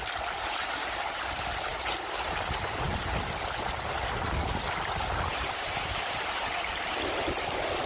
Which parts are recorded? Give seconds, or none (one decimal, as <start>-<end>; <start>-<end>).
0.0-7.9